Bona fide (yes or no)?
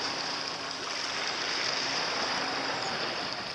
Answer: no